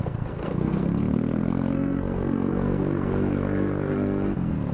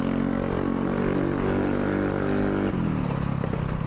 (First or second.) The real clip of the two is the second